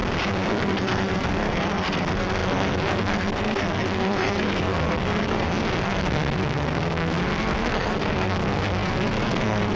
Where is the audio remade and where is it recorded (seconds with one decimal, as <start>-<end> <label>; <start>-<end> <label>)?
0.0-0.5 recorded; 0.5-9.8 remade